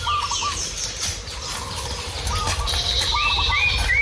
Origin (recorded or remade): recorded